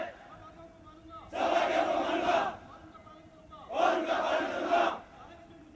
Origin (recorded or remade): recorded